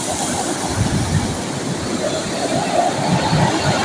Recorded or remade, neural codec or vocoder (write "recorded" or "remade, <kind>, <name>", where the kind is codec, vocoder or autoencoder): recorded